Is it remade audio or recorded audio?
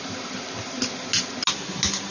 recorded